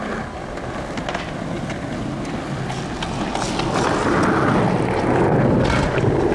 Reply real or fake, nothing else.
real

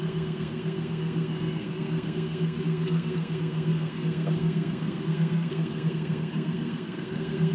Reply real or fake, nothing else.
fake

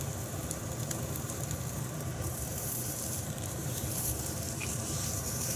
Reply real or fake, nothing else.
fake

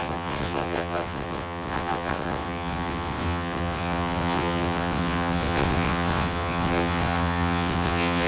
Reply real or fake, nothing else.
fake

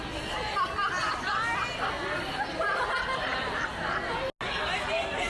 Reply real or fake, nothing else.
real